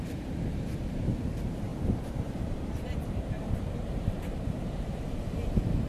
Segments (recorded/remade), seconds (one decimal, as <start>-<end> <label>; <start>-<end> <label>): 0.0-5.9 remade